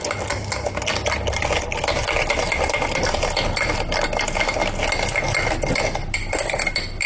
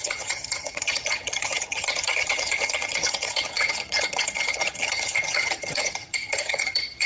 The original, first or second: first